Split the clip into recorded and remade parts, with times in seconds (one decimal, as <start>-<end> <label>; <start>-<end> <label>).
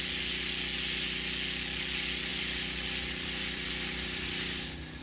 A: 0.0-2.3 recorded; 2.3-5.0 remade